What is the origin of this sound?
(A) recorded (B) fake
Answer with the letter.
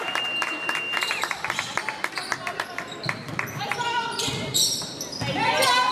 A